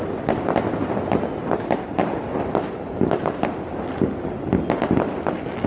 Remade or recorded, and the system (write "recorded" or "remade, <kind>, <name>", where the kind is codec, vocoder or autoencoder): recorded